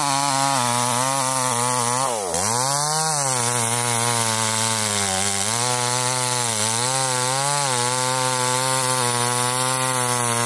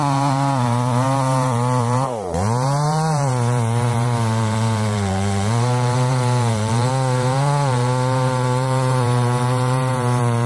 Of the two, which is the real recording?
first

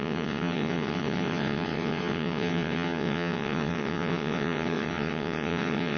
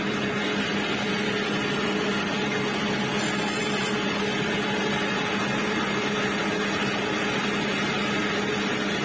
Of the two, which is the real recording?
second